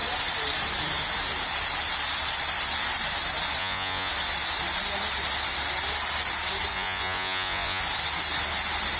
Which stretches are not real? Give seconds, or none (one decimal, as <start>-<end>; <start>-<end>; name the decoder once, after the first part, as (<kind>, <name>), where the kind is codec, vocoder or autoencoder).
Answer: 3.6-4.1 (vocoder, Vocos); 6.7-7.8